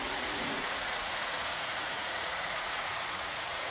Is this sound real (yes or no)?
no